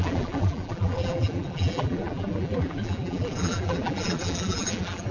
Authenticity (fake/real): fake